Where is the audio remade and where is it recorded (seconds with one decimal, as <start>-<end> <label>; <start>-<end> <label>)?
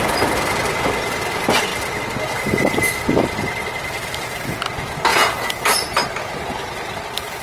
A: 0.0-5.1 recorded; 5.1-5.6 remade; 5.6-7.4 recorded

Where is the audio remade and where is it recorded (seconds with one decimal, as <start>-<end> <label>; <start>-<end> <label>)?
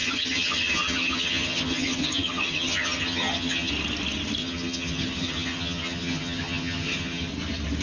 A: 0.0-3.7 remade; 3.7-4.4 recorded; 4.4-7.3 remade; 7.3-7.8 recorded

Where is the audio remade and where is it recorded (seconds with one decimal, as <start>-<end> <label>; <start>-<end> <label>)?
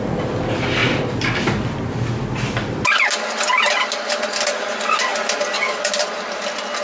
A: 0.0-6.8 recorded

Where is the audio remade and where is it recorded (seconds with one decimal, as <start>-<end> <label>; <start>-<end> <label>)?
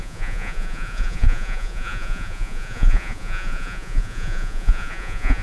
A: 0.0-5.4 remade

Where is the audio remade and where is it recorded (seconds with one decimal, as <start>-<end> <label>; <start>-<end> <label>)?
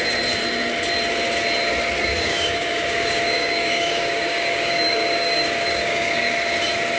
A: 0.0-2.1 recorded; 2.1-6.3 remade; 6.3-7.0 recorded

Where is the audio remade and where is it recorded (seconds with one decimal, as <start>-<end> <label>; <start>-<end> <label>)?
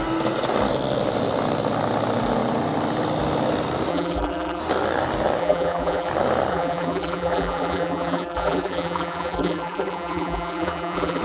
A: 0.0-3.9 recorded; 3.9-4.6 remade; 4.6-5.4 recorded; 5.4-6.1 remade; 6.1-6.5 recorded; 6.5-11.2 remade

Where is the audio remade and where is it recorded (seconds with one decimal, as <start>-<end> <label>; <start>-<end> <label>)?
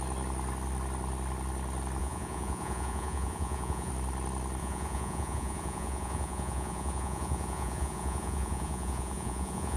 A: 0.0-2.0 recorded; 2.0-3.9 remade; 3.9-4.6 recorded; 4.6-9.8 remade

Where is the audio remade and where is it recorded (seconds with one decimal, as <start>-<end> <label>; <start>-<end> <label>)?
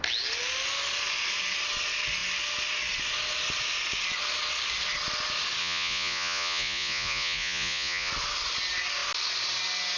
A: 0.0-5.6 recorded; 5.6-8.1 remade; 8.1-10.0 recorded